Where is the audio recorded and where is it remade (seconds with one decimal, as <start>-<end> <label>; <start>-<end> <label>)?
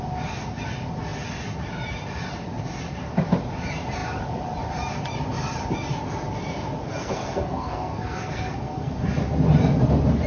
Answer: 0.0-6.9 recorded; 6.9-8.9 remade; 8.9-10.3 recorded